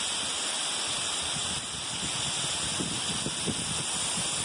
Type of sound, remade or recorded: recorded